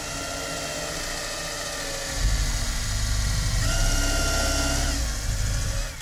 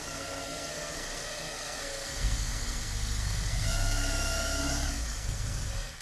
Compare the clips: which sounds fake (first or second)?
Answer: second